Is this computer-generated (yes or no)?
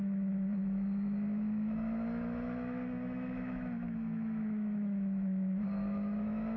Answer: yes